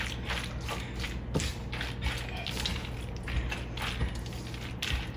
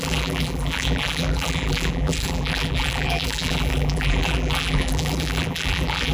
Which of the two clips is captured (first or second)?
first